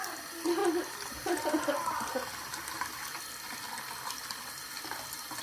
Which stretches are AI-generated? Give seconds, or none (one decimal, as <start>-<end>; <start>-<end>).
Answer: none